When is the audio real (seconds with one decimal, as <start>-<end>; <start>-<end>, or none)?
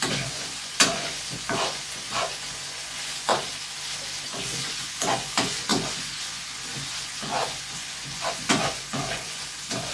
3.3-4.2